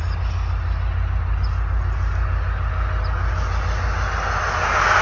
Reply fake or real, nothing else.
real